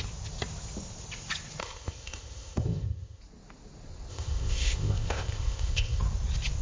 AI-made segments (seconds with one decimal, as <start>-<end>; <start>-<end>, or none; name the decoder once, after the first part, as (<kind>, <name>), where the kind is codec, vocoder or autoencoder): 1.6-3.2 (codec, ZipCodec); 4.1-6.0